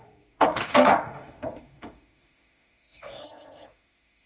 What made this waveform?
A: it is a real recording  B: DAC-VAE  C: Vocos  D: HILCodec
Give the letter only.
B